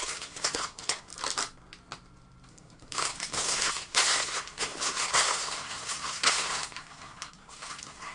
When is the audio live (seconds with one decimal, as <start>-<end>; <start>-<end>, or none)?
1.1-2.5